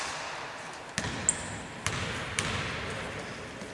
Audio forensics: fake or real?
real